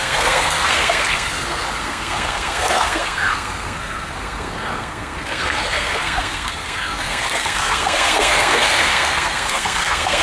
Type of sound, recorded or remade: remade